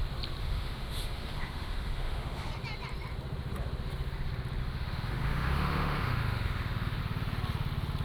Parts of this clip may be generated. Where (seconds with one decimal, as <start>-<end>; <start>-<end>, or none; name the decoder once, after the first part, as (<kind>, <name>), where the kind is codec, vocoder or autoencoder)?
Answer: 0.4-2.5 (autoencoder, DAC-VAE); 4.6-7.0